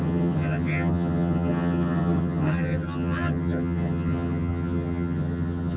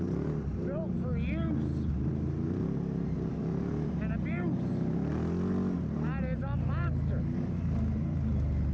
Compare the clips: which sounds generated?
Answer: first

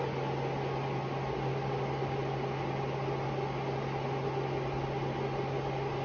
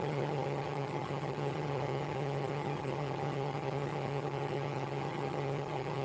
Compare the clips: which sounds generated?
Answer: second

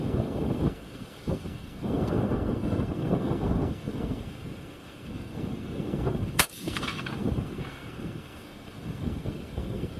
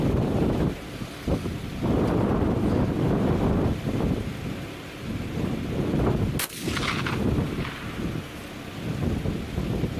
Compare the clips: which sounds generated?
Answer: first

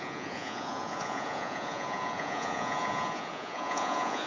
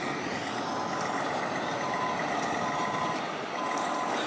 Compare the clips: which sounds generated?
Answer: first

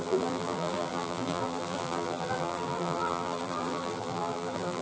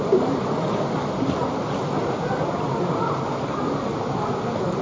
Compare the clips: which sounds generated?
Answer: first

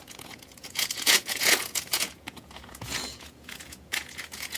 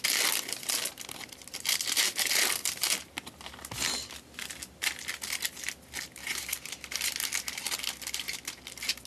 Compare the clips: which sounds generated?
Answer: first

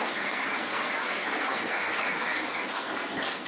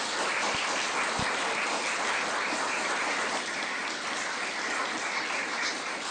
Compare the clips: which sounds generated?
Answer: first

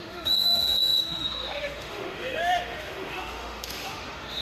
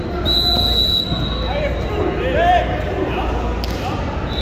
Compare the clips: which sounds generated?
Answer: first